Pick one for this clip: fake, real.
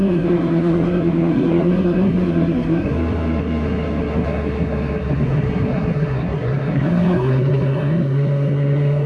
fake